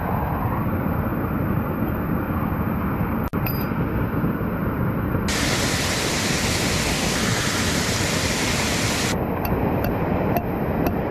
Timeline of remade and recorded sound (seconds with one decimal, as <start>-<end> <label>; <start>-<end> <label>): 0.0-11.1 recorded